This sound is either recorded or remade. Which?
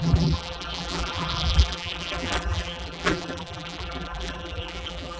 remade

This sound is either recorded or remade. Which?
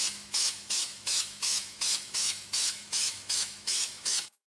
remade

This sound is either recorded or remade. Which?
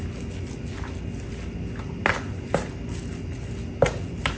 recorded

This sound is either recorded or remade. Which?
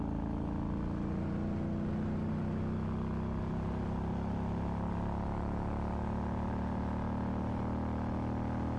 recorded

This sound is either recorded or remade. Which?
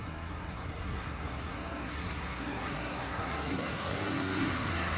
remade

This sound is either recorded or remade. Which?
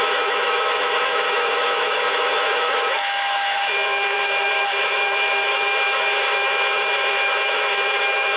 remade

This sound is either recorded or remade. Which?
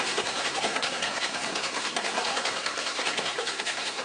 remade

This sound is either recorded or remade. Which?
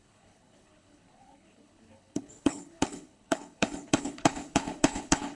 remade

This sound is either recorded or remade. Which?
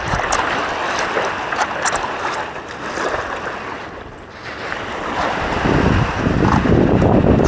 recorded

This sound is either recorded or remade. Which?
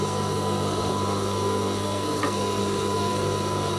remade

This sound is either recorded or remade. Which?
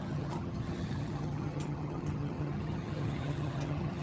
remade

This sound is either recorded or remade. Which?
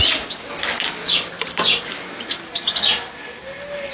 recorded